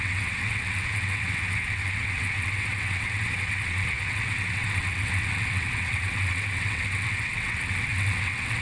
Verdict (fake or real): fake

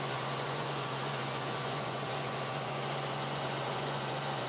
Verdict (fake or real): fake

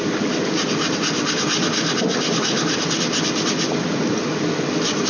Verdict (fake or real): real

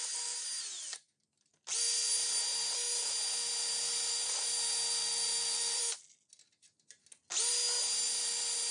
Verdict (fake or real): real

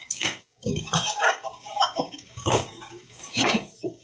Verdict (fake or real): fake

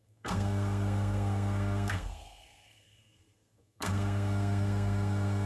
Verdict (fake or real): fake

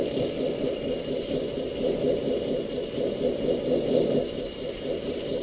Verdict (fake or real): real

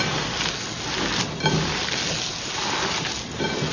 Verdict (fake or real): real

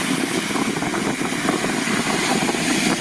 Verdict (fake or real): real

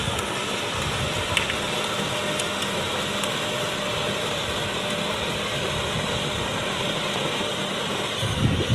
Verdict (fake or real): real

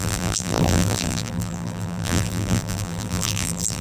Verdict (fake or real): fake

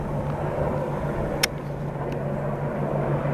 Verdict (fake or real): real